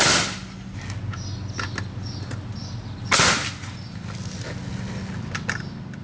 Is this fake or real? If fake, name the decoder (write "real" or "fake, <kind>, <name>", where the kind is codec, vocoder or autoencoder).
real